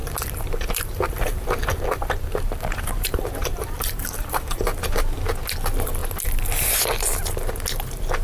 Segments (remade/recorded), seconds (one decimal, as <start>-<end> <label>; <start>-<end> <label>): 0.0-4.9 remade; 4.9-8.2 recorded